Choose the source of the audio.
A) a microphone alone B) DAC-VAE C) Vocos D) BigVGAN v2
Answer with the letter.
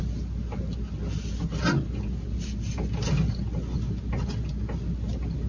A